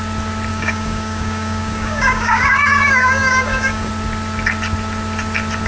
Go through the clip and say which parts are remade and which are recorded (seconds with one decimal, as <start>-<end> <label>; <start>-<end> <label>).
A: 0.0-0.5 recorded; 0.5-3.9 remade; 3.9-5.7 recorded